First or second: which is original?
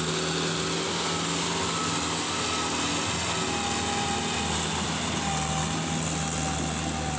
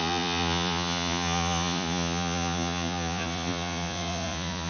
first